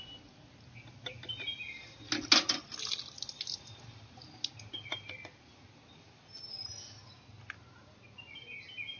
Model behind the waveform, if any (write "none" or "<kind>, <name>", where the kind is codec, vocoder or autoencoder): none